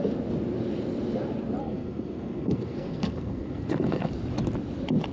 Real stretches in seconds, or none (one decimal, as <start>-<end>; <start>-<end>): 0.0-1.6; 4.1-5.1